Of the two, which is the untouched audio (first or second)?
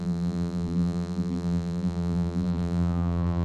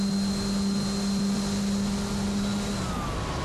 second